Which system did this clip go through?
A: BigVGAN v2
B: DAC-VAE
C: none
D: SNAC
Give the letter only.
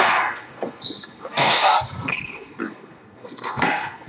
D